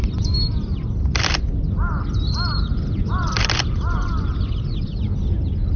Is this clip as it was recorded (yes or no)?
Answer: yes